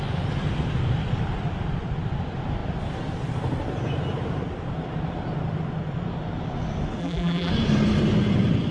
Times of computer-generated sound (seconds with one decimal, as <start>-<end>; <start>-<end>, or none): 7.0-7.5